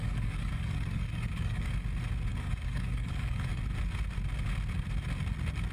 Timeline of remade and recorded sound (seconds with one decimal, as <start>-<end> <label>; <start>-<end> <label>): 0.0-1.7 remade; 1.7-2.3 recorded; 2.3-3.6 remade; 3.6-5.7 recorded